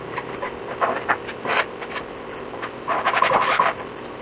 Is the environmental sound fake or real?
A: fake